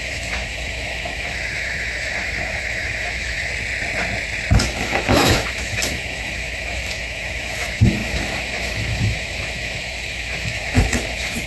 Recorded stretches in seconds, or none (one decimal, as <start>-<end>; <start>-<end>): 3.5-4.6